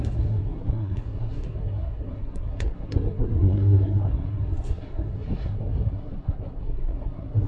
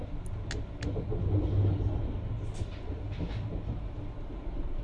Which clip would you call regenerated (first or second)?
first